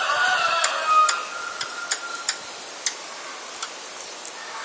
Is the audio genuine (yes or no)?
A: yes